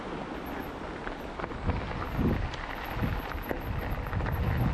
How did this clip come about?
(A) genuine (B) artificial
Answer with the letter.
A